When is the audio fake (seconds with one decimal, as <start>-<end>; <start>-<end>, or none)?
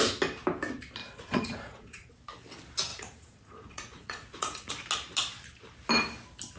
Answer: 1.0-2.1; 2.9-4.7